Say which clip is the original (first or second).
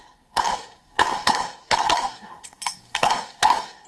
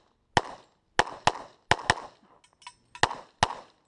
second